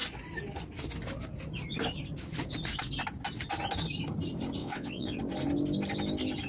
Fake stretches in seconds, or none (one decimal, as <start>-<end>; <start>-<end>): 4.6-5.2